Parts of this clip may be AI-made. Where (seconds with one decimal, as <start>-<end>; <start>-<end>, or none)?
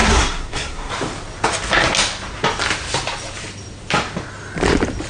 0.0-0.9